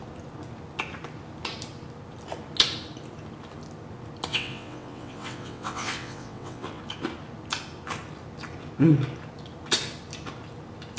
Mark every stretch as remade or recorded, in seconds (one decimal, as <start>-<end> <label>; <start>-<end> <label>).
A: 0.0-4.3 recorded; 4.3-6.8 remade; 6.8-11.0 recorded